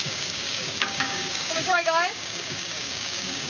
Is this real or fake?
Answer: fake